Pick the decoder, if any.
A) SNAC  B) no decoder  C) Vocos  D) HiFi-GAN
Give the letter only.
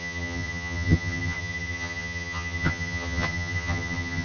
D